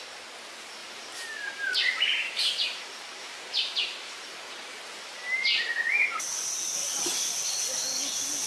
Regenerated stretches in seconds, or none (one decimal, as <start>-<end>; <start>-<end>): 0.8-5.3; 6.8-7.5